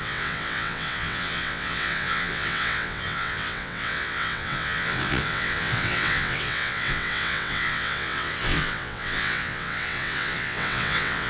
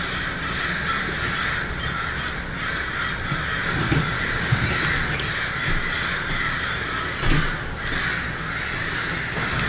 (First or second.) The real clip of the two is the second